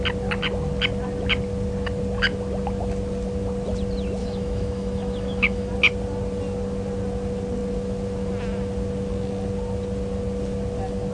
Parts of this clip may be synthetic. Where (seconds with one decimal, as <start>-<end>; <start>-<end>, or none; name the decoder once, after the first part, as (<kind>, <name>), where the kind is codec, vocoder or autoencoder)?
4.2-5.7 (autoencoder, DAC-VAE)